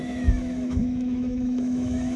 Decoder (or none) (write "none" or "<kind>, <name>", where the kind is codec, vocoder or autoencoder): autoencoder, DAC-VAE